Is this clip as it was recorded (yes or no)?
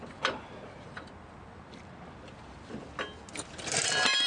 yes